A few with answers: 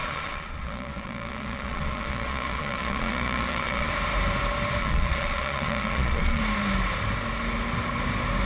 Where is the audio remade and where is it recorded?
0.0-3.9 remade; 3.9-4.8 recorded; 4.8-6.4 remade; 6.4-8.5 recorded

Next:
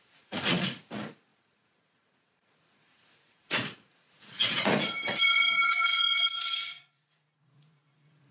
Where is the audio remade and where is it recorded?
0.0-8.3 remade

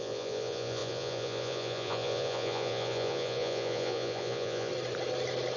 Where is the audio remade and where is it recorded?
0.0-4.7 remade; 4.7-5.6 recorded

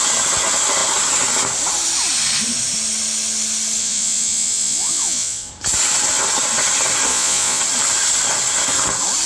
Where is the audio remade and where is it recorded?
0.0-3.8 recorded; 3.8-5.5 remade; 5.5-7.1 recorded; 7.1-7.6 remade; 7.6-9.3 recorded

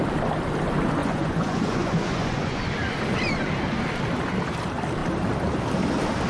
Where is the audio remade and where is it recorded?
0.0-1.0 recorded; 1.0-2.6 remade; 2.6-6.3 recorded